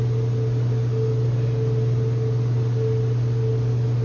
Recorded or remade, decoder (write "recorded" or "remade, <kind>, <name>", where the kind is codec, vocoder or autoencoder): recorded